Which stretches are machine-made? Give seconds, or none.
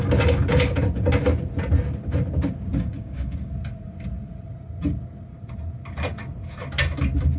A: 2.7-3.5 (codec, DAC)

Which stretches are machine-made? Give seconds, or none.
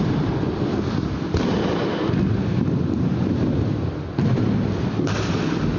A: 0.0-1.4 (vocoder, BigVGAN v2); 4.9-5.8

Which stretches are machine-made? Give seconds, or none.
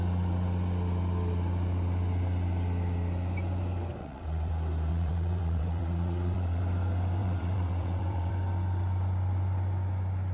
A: 4.0-4.5 (vocoder, WaveNeXt); 4.9-6.6; 7.2-8.3